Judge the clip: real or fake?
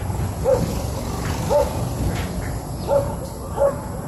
real